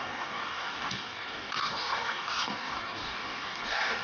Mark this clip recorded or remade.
remade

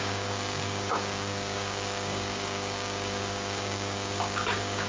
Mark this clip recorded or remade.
remade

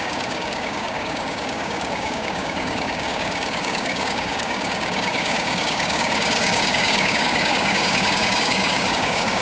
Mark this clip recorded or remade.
remade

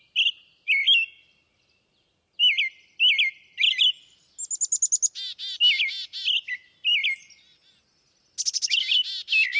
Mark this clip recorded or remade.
recorded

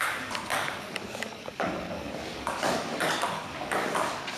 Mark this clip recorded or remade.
remade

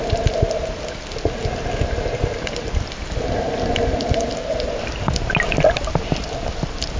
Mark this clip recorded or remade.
recorded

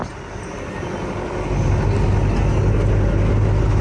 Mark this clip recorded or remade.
recorded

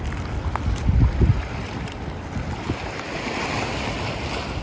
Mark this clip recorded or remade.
recorded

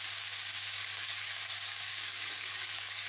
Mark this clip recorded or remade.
remade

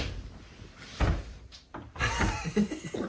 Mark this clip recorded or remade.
recorded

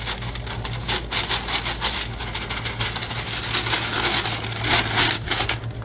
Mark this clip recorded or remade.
recorded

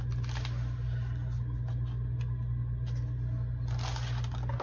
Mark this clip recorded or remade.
recorded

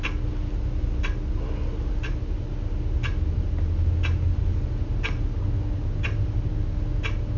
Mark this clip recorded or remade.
recorded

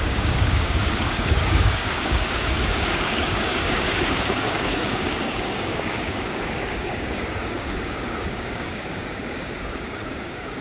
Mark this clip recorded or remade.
remade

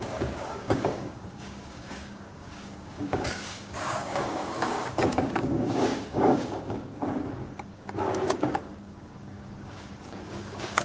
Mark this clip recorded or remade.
remade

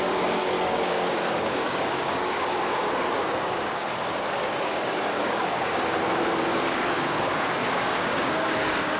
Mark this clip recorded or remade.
remade